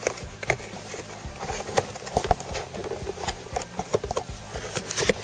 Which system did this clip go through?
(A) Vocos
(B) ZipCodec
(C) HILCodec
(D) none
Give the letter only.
D